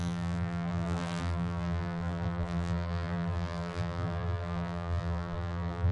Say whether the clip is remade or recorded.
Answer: remade